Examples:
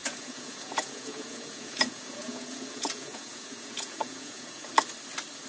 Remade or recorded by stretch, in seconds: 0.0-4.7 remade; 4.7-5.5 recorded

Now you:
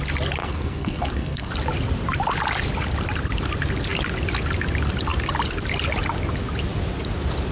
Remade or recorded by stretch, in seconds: 0.0-0.4 recorded; 0.4-1.5 remade; 1.5-7.5 recorded

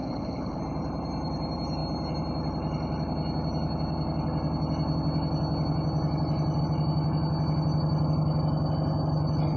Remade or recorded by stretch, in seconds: 0.0-0.6 remade; 0.6-9.6 recorded

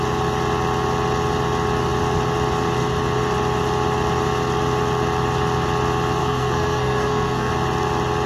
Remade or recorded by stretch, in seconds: 0.0-6.2 recorded; 6.2-7.5 remade; 7.5-8.3 recorded

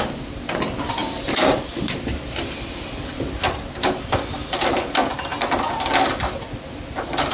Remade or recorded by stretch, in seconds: 0.0-1.0 recorded; 1.0-2.8 remade; 2.8-7.3 recorded

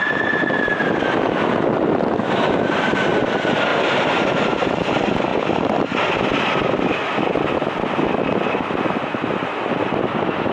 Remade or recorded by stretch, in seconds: 0.0-3.7 recorded; 3.7-4.4 remade; 4.4-10.5 recorded